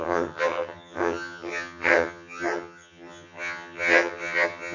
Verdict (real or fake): fake